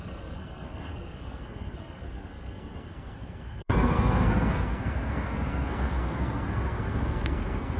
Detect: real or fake fake